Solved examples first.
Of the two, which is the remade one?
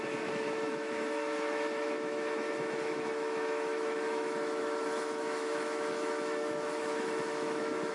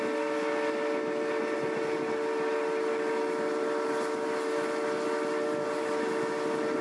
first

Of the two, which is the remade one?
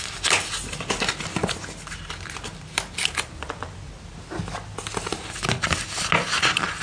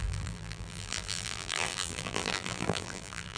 second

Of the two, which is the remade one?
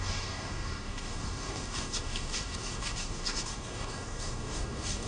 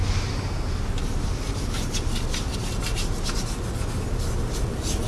first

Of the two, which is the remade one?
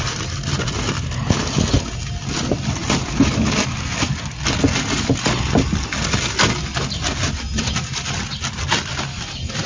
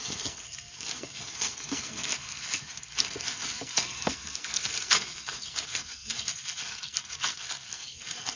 second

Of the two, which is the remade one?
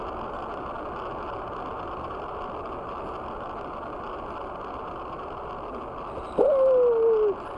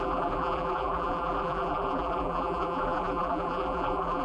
second